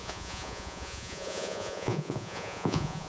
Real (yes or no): no